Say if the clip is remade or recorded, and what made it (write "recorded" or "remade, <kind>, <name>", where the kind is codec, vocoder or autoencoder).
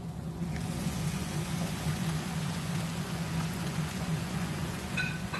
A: remade, vocoder, Vocos